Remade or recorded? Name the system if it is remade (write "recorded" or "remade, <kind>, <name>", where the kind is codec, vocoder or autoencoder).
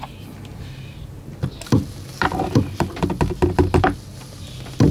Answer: recorded